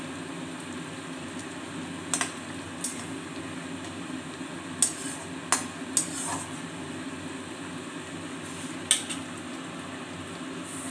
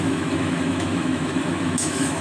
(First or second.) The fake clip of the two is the second